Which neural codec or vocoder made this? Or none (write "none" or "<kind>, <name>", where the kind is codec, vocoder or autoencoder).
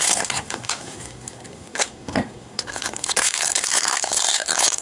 codec, SNAC